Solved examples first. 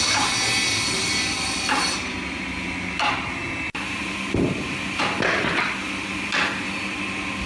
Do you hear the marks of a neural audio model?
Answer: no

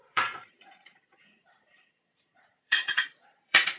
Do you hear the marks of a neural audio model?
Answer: yes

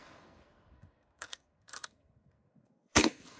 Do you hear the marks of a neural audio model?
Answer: yes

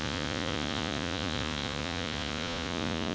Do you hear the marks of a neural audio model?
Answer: yes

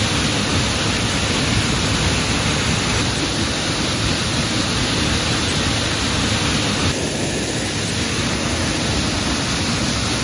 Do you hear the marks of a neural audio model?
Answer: no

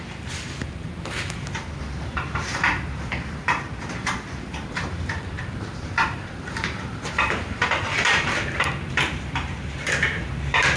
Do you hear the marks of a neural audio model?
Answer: yes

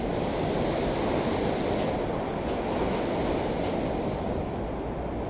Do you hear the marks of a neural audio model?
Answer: no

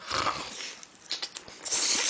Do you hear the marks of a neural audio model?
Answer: no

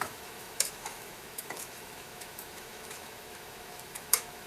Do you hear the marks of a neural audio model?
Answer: yes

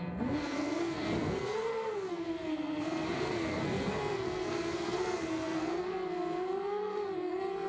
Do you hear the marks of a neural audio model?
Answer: yes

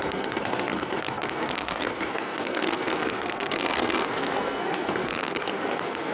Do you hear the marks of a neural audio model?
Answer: yes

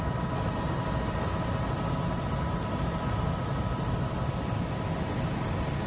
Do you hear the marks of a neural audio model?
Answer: no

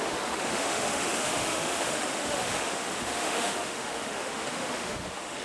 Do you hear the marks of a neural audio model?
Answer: yes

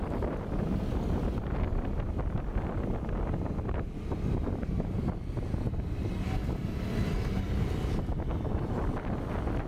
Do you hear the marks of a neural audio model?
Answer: no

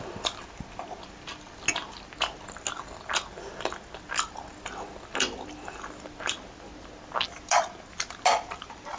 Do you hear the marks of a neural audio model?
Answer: no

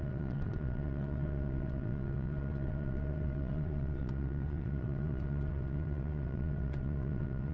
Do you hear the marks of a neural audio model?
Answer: yes